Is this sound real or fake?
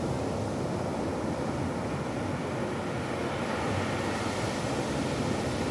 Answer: real